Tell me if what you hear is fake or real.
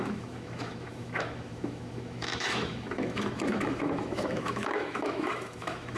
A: fake